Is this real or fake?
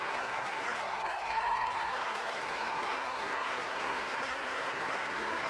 fake